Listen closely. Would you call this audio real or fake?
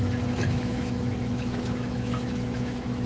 fake